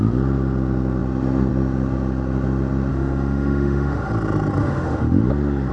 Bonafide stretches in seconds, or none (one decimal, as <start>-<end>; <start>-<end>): 0.0-2.9; 4.1-4.6; 5.3-5.7